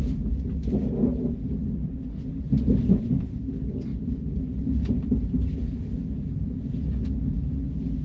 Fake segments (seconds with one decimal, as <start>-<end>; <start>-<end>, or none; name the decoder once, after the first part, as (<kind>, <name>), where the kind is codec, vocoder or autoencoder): 3.9-5.4 (vocoder, BigVGAN v2)